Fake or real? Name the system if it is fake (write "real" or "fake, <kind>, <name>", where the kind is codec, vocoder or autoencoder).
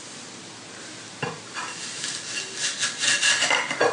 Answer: real